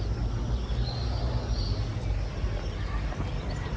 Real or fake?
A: real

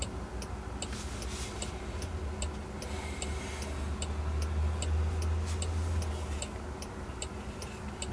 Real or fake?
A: real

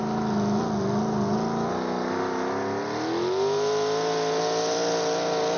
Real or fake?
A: real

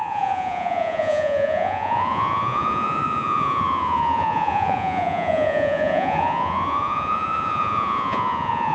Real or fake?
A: fake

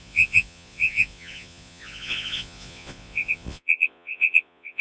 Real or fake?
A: fake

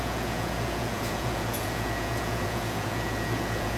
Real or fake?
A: fake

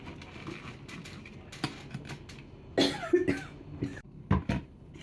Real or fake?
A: real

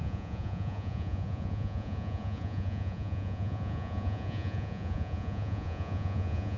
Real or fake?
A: fake